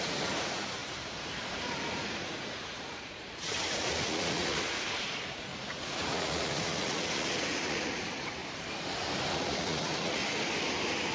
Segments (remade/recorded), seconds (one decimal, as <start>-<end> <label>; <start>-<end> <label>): 0.0-8.4 remade; 8.4-9.3 recorded; 9.3-10.2 remade; 10.2-11.1 recorded

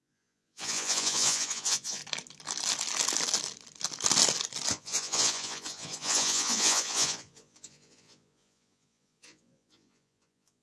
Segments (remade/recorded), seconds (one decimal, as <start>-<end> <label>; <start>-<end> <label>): 0.0-2.0 remade; 2.0-4.7 recorded; 4.7-10.6 remade

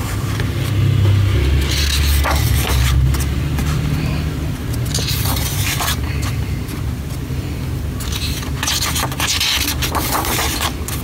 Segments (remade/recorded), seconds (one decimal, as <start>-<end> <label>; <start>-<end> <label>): 0.0-11.0 recorded

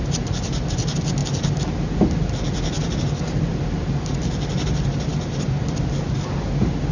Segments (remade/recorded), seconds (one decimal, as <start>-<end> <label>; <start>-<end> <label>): 0.0-6.9 recorded

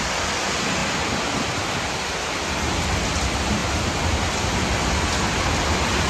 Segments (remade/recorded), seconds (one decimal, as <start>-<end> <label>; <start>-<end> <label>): 0.0-6.1 recorded

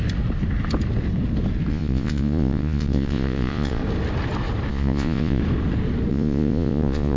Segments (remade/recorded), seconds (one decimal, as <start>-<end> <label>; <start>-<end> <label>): 0.0-1.7 recorded; 1.7-3.8 remade; 3.8-4.7 recorded; 4.7-5.4 remade; 5.4-6.1 recorded; 6.1-7.2 remade

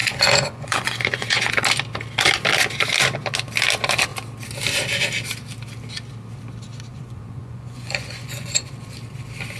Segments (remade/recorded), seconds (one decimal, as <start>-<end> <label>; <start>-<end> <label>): 0.0-1.5 remade; 1.5-6.9 recorded; 6.9-8.7 remade; 8.7-9.6 recorded